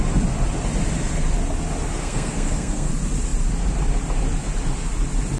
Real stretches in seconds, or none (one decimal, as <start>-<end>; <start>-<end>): 0.0-2.0; 2.9-5.4